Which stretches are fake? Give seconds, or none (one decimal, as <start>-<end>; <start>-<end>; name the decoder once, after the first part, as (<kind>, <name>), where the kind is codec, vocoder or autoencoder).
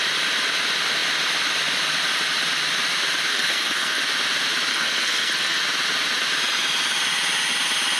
3.3-4.0 (codec, SNAC); 4.7-5.6